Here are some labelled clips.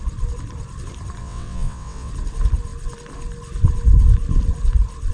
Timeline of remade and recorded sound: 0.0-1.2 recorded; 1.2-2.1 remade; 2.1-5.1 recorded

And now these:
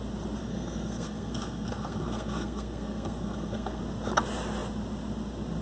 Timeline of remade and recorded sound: 0.0-0.4 recorded; 0.4-3.8 remade; 3.8-5.6 recorded

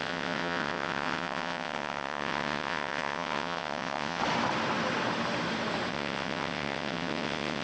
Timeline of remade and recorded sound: 0.0-4.2 remade; 4.2-5.9 recorded; 5.9-7.6 remade